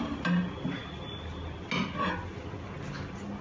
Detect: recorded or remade recorded